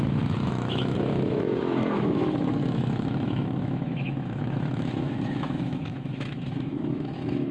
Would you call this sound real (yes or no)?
no